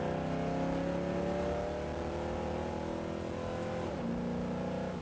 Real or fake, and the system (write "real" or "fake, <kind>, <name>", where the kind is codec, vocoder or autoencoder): real